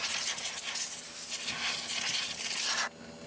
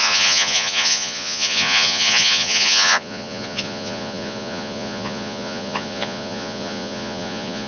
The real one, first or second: first